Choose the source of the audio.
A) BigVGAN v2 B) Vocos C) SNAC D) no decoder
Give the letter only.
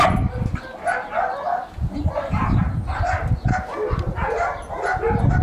D